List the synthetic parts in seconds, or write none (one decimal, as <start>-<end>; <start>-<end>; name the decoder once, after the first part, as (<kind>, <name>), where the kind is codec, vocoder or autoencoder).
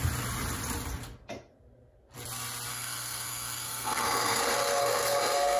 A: 2.7-5.6 (codec, SNAC)